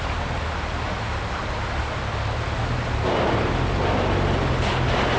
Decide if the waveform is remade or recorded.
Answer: recorded